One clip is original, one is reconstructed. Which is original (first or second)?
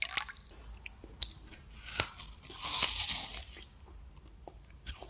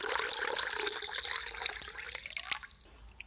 second